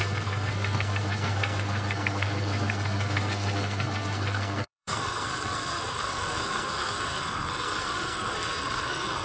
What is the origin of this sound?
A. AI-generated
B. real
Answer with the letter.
A